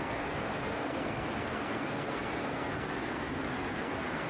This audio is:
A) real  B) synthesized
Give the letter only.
B